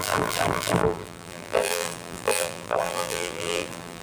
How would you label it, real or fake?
fake